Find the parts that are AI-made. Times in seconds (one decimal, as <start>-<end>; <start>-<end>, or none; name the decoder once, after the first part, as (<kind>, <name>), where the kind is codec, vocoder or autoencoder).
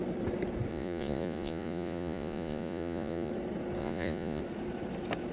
0.7-3.3 (vocoder, Vocos); 3.8-4.4